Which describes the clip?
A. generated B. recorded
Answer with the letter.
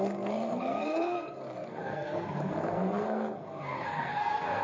A